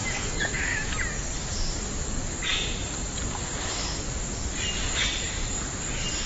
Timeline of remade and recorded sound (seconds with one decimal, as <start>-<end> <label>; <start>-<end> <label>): 0.0-0.9 remade; 0.9-6.3 recorded